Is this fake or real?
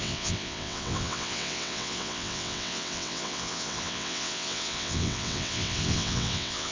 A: fake